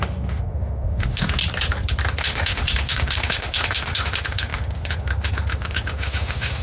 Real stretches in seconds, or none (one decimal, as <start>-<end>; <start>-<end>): 1.4-2.2